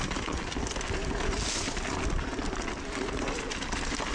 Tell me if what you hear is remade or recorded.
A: recorded